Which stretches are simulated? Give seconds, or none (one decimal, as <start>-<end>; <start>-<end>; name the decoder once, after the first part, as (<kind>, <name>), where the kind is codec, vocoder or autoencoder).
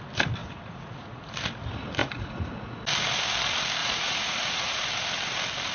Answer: 0.4-1.3 (vocoder, Vocos); 2.0-2.8; 3.8-4.7